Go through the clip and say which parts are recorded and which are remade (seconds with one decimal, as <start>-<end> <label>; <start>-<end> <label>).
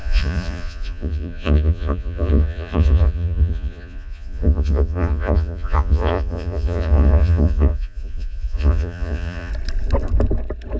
0.0-9.5 remade; 9.5-10.8 recorded